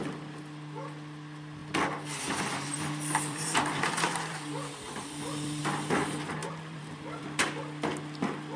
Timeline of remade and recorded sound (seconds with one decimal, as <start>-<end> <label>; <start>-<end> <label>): 0.0-2.7 recorded; 2.7-5.6 remade; 5.6-6.4 recorded; 6.4-7.2 remade; 7.2-8.6 recorded